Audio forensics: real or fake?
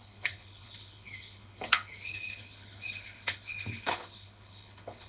fake